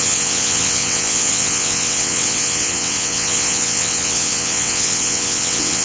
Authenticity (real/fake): fake